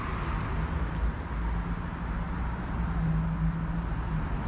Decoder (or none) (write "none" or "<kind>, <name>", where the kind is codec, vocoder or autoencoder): none